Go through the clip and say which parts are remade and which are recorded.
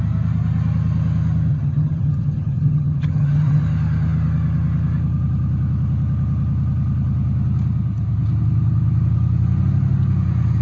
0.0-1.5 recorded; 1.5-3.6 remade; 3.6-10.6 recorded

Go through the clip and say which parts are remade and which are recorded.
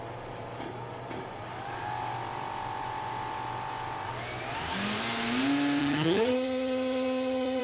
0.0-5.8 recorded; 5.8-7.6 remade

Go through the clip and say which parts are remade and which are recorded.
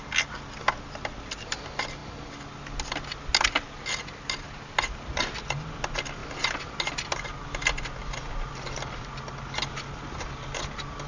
0.0-11.1 recorded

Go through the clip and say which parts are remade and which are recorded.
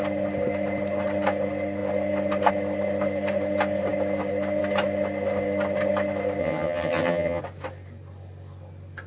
0.0-6.4 recorded; 6.4-7.4 remade; 7.4-9.1 recorded